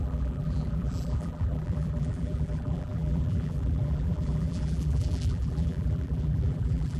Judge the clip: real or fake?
fake